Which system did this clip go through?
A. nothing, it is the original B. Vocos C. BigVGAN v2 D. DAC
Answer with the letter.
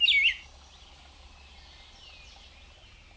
A